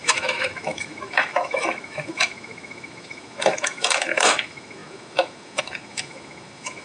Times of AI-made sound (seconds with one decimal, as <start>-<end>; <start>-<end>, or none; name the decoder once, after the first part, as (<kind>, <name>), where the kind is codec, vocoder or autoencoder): 0.0-6.8 (autoencoder, DAC-VAE)